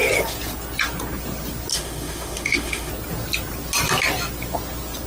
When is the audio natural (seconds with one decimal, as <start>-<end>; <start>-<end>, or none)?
0.0-1.7; 2.9-5.1